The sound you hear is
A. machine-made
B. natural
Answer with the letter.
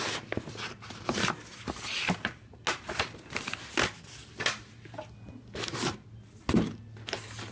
B